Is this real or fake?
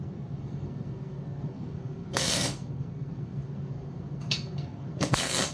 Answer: fake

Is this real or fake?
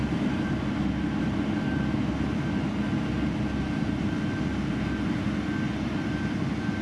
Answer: real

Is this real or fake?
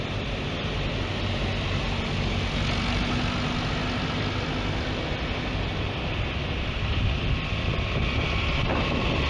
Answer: real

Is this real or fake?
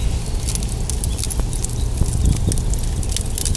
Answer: real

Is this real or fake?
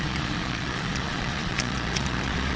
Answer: fake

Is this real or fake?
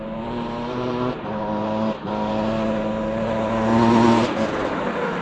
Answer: fake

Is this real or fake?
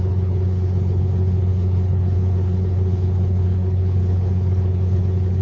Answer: fake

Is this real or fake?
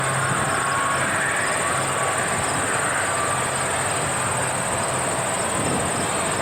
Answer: real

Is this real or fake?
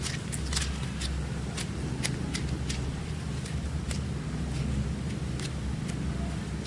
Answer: real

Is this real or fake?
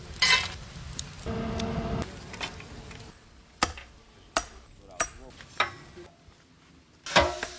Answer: real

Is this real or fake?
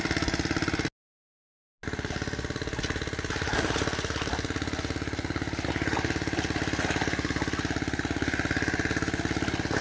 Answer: real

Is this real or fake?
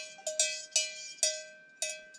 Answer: real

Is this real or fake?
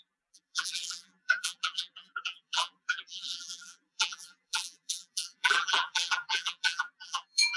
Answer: fake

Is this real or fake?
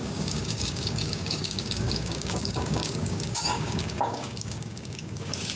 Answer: fake